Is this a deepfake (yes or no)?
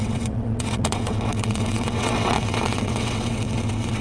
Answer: yes